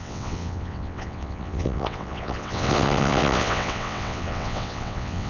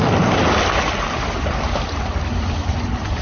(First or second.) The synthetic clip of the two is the first